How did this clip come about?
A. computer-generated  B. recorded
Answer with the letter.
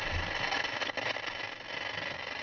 B